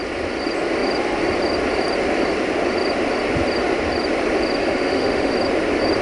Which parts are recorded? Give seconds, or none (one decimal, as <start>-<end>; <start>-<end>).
0.0-4.6; 5.3-6.0